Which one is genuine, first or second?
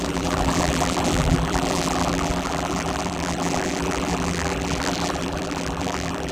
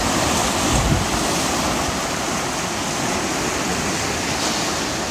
second